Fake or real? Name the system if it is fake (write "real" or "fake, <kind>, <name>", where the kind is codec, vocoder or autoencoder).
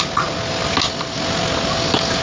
real